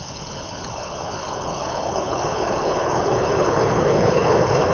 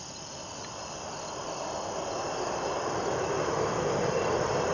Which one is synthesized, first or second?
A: first